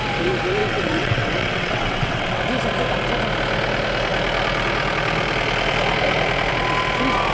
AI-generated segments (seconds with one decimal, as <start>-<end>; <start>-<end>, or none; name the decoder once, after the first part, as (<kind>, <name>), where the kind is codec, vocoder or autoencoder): 0.6-2.4 (vocoder, WaveNeXt)